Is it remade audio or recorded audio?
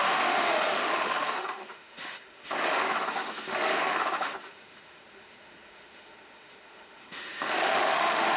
remade